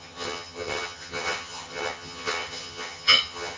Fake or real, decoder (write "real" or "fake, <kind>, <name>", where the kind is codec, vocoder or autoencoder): fake, vocoder, HiFi-GAN